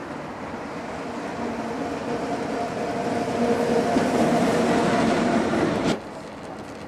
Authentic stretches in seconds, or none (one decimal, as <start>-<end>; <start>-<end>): 0.8-2.0; 6.1-6.9